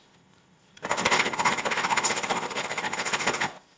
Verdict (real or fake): fake